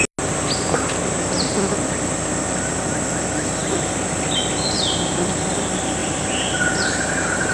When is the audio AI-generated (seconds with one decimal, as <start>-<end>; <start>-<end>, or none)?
6.0-6.7